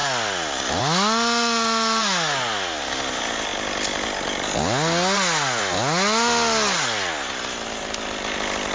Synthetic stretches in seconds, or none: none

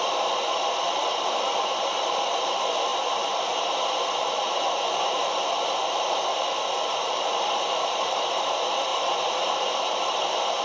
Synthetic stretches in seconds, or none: 0.0-10.6 (vocoder, BigVGAN v2)

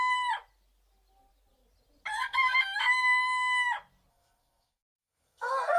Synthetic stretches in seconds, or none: 2.1-2.6 (codec, SNAC); 4.1-5.8

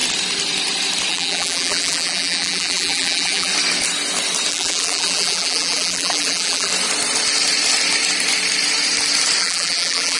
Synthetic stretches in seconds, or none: 1.1-3.5 (vocoder, BigVGAN v2); 4.5-6.7; 9.4-10.2

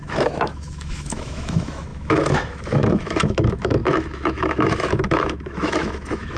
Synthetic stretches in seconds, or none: 0.0-6.4 (autoencoder, DAC-VAE)

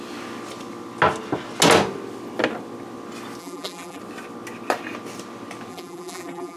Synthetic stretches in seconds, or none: 3.4-4.0 (vocoder, BigVGAN v2); 5.7-6.6

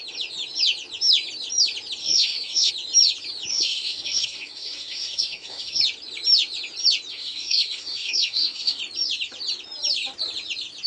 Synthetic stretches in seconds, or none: 2.0-2.7 (codec, SNAC); 3.5-5.8; 7.1-8.8

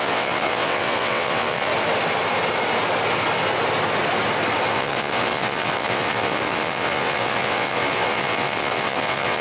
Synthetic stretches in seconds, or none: 0.0-1.7 (vocoder, WaveNeXt); 4.7-9.4